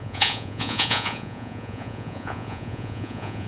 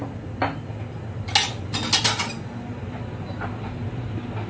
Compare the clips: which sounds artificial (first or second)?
first